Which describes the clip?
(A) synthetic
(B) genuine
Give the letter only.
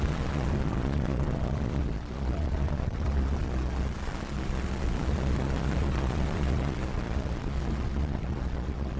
A